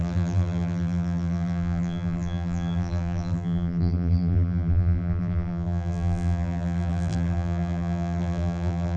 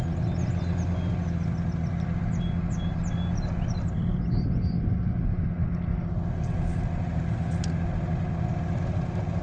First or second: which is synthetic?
first